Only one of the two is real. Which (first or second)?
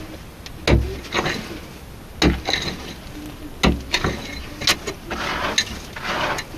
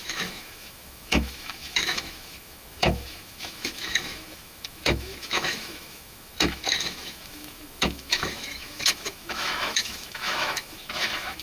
first